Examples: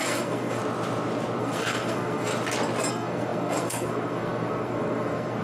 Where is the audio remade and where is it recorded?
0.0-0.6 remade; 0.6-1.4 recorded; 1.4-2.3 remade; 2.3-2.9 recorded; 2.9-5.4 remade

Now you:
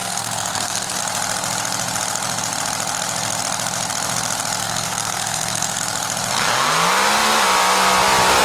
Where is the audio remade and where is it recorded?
0.0-1.0 remade; 1.0-4.6 recorded; 4.6-5.8 remade; 5.8-8.4 recorded

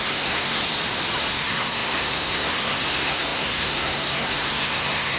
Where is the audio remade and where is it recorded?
0.0-0.6 remade; 0.6-1.3 recorded; 1.3-5.2 remade

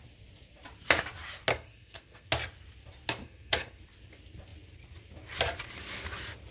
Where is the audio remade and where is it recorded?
0.0-1.5 recorded; 1.5-2.3 remade; 2.3-3.2 recorded; 3.2-3.8 remade; 3.8-6.5 recorded